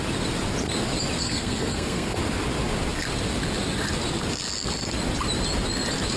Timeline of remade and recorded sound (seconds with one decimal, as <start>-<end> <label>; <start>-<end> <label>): 0.0-1.2 recorded; 1.2-2.2 remade; 2.2-6.2 recorded